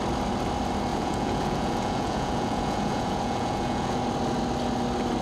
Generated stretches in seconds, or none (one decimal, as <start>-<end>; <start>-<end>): 0.9-4.0